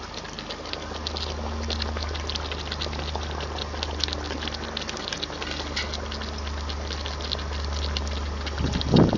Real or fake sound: real